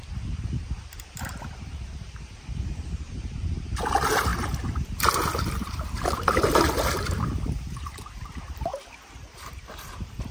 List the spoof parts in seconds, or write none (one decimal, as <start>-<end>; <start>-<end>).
0.0-8.7; 9.9-10.3